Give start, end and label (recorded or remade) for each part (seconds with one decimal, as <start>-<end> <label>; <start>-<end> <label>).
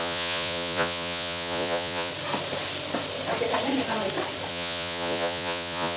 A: 0.0-2.1 remade; 2.1-4.5 recorded; 4.5-6.0 remade